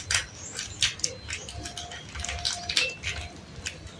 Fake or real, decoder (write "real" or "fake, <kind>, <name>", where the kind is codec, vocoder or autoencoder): real